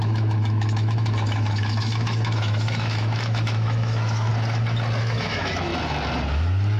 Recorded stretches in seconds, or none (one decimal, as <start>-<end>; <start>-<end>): 4.3-5.0; 5.7-6.8